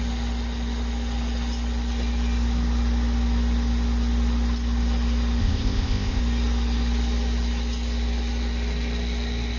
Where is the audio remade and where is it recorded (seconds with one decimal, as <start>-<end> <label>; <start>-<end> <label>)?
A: 0.0-5.4 recorded; 5.4-6.2 remade; 6.2-9.6 recorded